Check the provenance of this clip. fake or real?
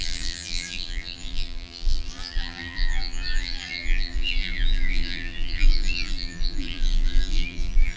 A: fake